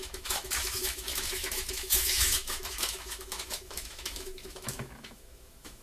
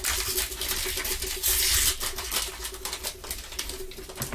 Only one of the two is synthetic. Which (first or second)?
first